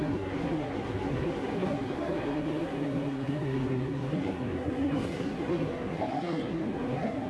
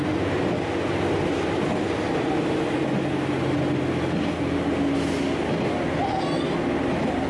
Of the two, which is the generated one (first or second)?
first